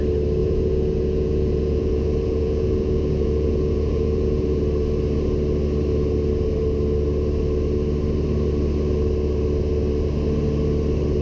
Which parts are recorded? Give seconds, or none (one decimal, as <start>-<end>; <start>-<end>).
0.0-0.4; 4.6-11.2